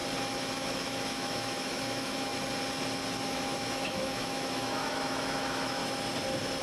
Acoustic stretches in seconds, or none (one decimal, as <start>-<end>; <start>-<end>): 0.0-0.5; 2.3-3.2; 5.8-6.6